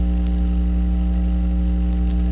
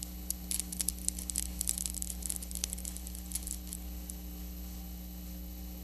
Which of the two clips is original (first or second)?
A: first